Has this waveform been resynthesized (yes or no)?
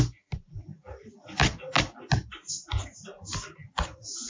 no